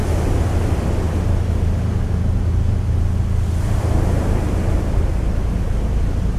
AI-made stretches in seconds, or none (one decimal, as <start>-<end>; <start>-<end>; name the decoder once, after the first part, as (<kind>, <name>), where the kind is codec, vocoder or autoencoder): none